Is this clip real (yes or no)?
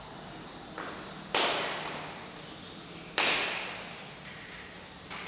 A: yes